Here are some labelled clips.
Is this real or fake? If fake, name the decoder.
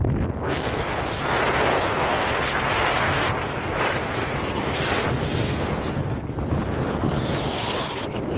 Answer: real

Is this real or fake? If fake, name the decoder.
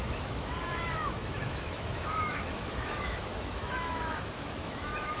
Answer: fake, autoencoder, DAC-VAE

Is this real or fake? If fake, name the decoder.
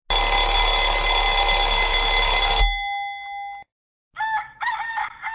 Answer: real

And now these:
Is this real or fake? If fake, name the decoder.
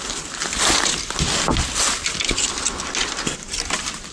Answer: real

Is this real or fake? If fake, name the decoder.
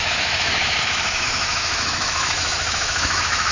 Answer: fake, autoencoder, DAC-VAE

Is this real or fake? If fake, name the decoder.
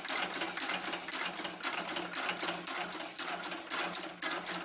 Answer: real